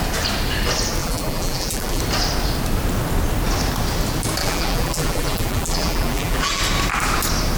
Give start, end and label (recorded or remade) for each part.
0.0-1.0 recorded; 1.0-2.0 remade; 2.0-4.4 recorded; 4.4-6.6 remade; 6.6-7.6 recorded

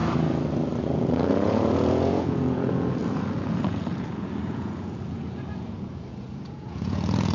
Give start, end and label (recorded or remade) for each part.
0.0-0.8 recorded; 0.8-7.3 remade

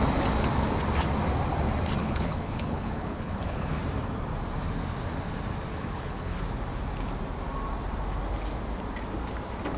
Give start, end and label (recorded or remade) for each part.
0.0-2.0 recorded; 2.0-3.8 remade; 3.8-5.7 recorded; 5.7-6.4 remade; 6.4-9.8 recorded

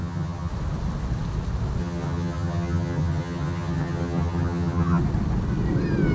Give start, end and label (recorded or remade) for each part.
0.0-0.5 remade; 0.5-1.8 recorded; 1.8-5.0 remade; 5.0-6.1 recorded

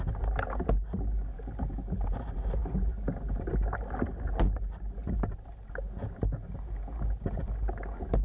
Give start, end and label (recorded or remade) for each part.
0.0-8.2 recorded

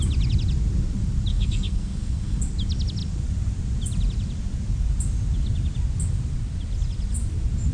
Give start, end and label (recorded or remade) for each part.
0.0-1.3 recorded; 1.3-2.4 remade; 2.4-7.7 recorded

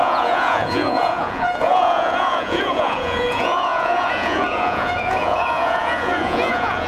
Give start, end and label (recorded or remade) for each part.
0.0-6.9 remade

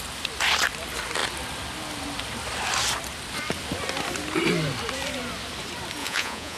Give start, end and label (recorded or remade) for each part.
0.0-6.0 recorded; 6.0-6.6 remade